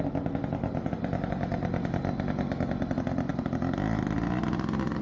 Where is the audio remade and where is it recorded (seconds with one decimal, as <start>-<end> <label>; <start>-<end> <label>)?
0.0-5.0 recorded